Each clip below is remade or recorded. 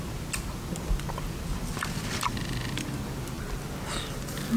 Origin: recorded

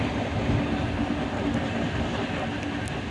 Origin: recorded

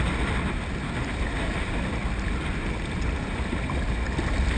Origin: recorded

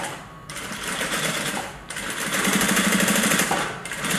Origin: remade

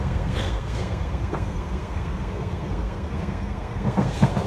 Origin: remade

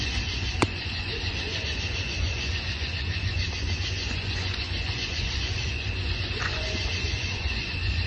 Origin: remade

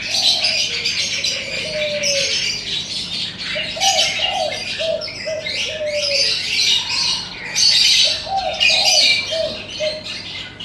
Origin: recorded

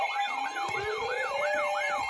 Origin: remade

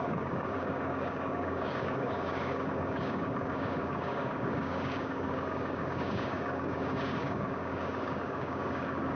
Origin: remade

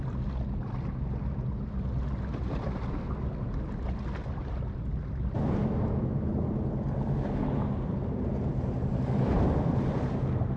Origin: recorded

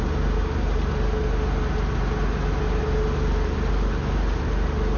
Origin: recorded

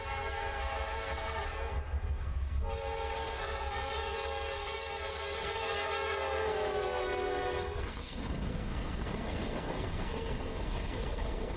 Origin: remade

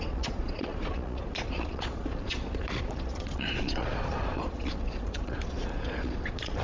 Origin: remade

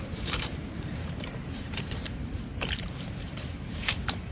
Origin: remade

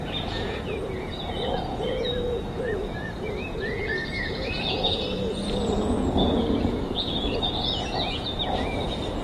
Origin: remade